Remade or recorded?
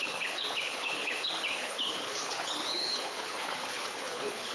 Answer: remade